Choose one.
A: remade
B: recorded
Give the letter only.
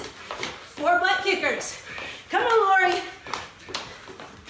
B